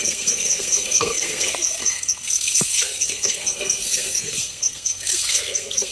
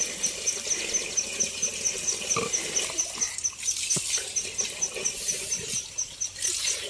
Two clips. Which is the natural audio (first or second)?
second